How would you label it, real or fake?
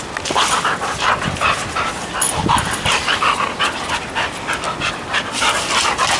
real